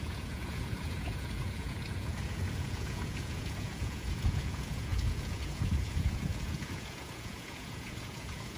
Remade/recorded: remade